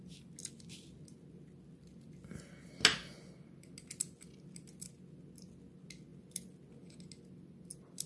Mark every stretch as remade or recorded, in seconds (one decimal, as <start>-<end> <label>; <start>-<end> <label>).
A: 0.0-8.1 recorded